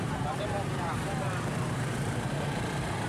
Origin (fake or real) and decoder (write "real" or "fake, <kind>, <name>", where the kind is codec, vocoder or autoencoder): fake, vocoder, BigVGAN v2